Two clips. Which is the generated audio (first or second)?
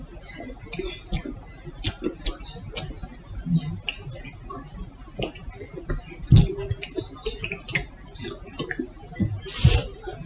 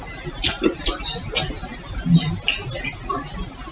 second